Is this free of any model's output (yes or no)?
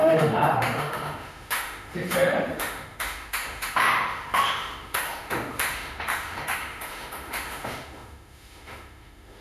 no